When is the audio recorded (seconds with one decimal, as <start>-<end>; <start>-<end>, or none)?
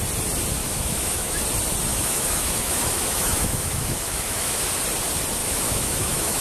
0.0-0.6; 1.4-1.9; 4.7-5.4